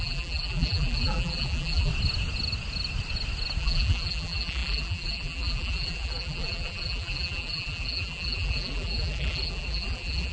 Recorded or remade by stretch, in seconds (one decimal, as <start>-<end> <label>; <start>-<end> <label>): 0.0-1.9 remade; 1.9-3.6 recorded; 3.6-10.3 remade

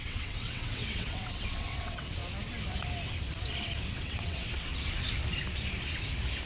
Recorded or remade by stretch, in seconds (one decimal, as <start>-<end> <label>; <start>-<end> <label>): 0.0-2.2 remade; 2.2-3.9 recorded; 3.9-4.7 remade; 4.7-6.5 recorded

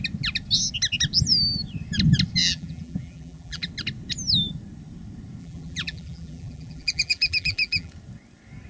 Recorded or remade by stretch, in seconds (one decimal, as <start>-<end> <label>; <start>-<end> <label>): 0.0-2.4 recorded; 2.4-3.7 remade; 3.7-5.4 recorded; 5.4-7.9 remade; 7.9-8.7 recorded